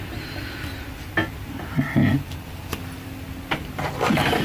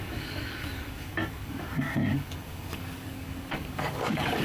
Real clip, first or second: first